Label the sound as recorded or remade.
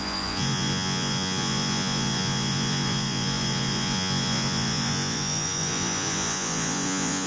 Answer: remade